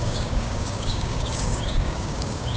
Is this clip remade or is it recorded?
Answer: remade